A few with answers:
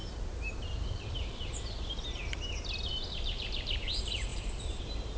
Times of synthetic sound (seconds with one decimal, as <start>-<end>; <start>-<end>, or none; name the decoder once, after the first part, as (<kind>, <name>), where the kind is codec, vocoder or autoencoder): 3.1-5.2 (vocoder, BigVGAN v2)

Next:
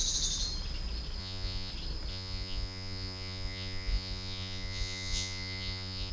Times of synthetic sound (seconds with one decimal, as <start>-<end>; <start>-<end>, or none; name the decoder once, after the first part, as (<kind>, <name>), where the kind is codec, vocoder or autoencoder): 1.2-1.7 (vocoder, Vocos); 2.1-6.1

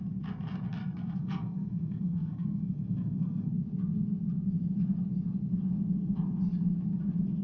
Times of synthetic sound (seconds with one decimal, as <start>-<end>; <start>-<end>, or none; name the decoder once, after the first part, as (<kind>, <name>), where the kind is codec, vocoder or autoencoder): 0.8-3.5 (codec, SNAC)

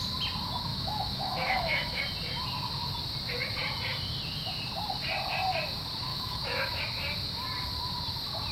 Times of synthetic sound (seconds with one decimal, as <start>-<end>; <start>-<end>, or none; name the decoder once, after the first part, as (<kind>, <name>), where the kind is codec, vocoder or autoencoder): 0.7-2.0 (autoencoder, DAC-VAE); 6.1-6.8

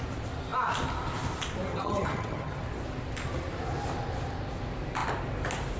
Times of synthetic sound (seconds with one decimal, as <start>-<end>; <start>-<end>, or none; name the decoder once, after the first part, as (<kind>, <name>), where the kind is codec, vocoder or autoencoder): 1.7-2.6 (vocoder, HiFi-GAN)

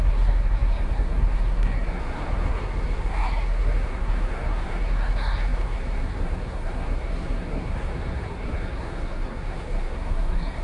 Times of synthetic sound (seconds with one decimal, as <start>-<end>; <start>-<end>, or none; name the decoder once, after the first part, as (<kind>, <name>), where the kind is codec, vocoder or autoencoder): 0.0-10.6 (codec, SNAC)

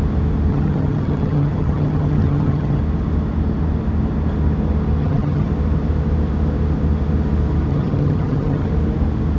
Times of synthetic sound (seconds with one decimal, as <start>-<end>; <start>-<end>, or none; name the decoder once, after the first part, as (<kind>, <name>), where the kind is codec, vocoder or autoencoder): 0.5-2.8 (vocoder, HiFi-GAN); 5.0-5.5; 7.7-8.7